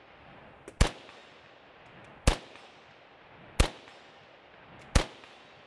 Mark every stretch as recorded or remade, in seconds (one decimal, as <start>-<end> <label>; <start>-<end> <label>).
0.0-5.7 recorded